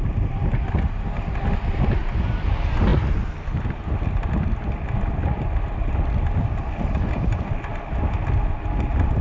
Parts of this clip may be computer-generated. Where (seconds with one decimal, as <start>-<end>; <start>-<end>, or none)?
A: none